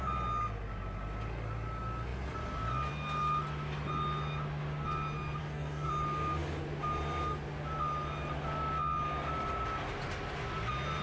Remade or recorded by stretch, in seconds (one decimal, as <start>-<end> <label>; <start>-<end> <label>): 0.0-5.4 recorded; 5.4-5.9 remade; 5.9-11.0 recorded